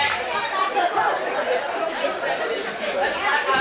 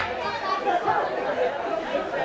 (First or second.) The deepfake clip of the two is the first